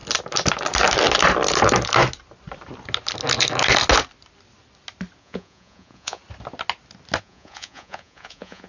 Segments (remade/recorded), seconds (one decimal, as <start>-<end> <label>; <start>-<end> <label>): 0.0-5.2 recorded; 5.2-6.2 remade; 6.2-7.2 recorded; 7.2-8.7 remade